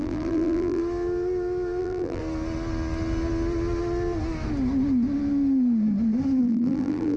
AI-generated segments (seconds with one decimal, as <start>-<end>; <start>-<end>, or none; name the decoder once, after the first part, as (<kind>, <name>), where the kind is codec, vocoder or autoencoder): 0.0-0.8 (vocoder, BigVGAN v2); 1.8-2.2; 6.4-7.2